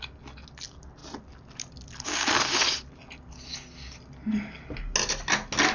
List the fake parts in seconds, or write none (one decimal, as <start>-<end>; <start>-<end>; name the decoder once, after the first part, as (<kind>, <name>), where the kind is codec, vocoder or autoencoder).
none